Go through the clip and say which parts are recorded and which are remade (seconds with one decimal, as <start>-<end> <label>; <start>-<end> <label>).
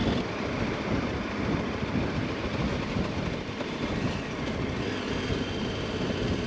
0.0-3.5 remade; 3.5-6.5 recorded